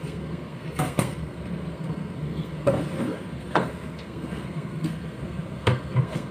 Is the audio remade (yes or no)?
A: yes